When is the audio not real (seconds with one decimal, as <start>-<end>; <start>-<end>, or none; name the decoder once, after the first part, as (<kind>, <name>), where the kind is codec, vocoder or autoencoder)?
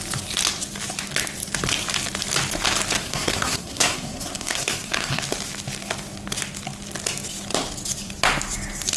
3.0-5.2 (codec, SNAC)